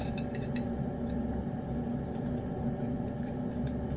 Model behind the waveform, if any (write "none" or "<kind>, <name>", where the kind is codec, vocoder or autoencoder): none